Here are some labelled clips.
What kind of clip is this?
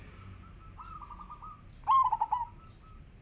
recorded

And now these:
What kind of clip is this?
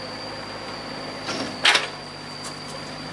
recorded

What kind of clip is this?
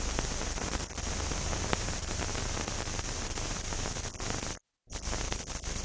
remade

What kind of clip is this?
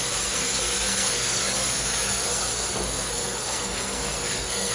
remade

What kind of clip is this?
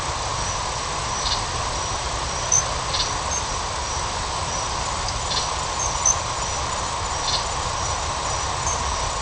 remade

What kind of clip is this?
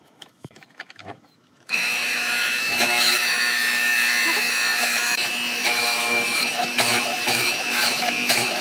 remade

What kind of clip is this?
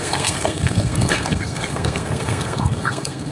remade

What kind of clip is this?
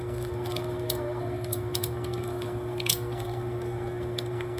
remade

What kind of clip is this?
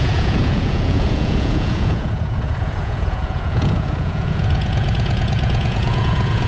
remade